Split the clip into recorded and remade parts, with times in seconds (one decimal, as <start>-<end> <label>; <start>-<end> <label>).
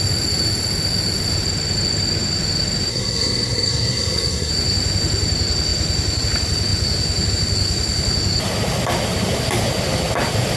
0.0-2.9 recorded; 2.9-4.5 remade; 4.5-10.6 recorded